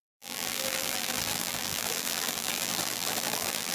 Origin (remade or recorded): remade